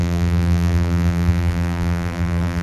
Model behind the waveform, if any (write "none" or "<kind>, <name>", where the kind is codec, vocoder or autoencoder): vocoder, BigVGAN v2